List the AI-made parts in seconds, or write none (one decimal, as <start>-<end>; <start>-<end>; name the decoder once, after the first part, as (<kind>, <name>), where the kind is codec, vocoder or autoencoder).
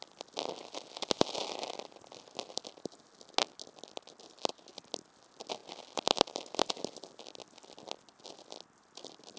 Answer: none